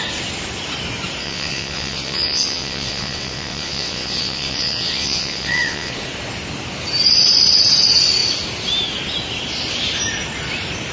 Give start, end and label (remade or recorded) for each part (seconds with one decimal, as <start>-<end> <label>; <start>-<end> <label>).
0.0-1.2 recorded; 1.2-5.9 remade; 5.9-10.9 recorded